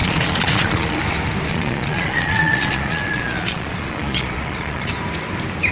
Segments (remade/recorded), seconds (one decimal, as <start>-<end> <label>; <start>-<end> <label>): 0.0-1.0 remade; 1.0-1.5 recorded; 1.5-4.9 remade; 4.9-5.7 recorded